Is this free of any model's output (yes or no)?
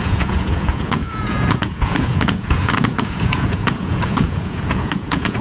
no